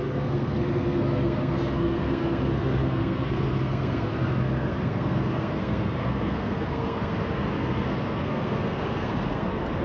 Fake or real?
fake